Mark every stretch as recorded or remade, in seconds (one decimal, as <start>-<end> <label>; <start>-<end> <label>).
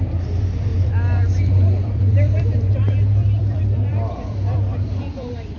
0.0-5.6 remade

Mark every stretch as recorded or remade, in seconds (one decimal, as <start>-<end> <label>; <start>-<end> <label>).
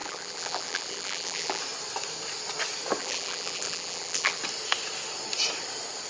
0.0-1.6 remade; 1.6-3.0 recorded; 3.0-4.4 remade; 4.4-6.1 recorded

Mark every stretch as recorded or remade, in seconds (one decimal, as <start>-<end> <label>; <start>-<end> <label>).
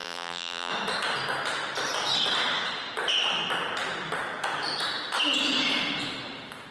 0.0-0.7 remade; 0.7-6.7 recorded